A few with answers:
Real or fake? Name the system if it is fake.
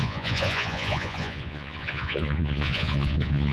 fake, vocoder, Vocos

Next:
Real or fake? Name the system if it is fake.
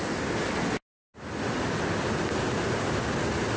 real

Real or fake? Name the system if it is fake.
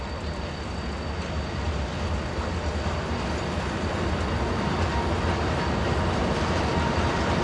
real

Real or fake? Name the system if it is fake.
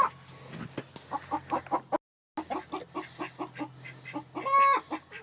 real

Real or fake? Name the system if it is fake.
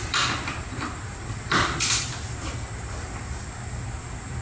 real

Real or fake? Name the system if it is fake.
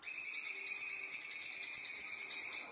real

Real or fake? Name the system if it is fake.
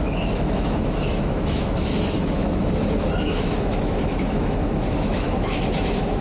fake, autoencoder, DAC-VAE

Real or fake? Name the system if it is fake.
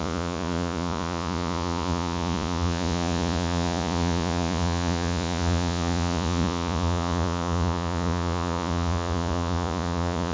fake, vocoder, Vocos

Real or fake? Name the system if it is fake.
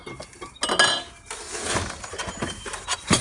real